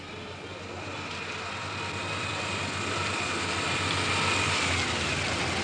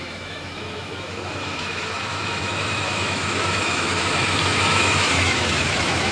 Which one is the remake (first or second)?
second